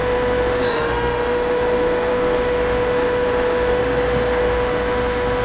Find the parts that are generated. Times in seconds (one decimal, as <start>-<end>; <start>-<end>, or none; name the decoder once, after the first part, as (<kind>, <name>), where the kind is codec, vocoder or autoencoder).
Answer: 0.0-3.8 (autoencoder, DAC-VAE); 4.4-5.4